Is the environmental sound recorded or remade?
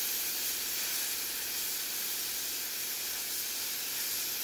recorded